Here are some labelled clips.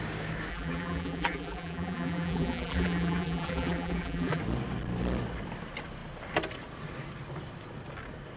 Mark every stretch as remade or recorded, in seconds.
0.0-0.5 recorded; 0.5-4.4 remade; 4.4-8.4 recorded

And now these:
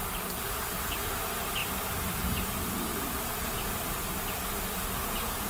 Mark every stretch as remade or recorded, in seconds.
0.0-1.2 remade; 1.2-1.6 recorded; 1.6-2.2 remade; 2.2-2.9 recorded; 2.9-4.1 remade; 4.1-5.5 recorded